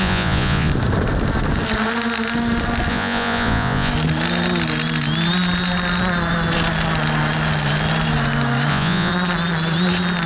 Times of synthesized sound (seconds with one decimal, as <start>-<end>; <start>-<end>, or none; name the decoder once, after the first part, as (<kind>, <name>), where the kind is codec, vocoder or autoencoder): 0.0-0.7 (vocoder, Vocos); 2.9-3.9; 8.7-9.1